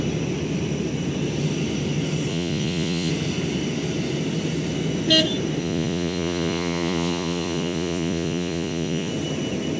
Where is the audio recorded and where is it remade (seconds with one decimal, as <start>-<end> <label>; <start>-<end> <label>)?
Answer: 0.0-2.3 recorded; 2.3-3.1 remade; 3.1-5.6 recorded; 5.6-9.1 remade; 9.1-9.8 recorded